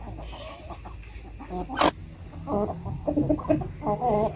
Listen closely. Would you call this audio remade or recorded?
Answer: recorded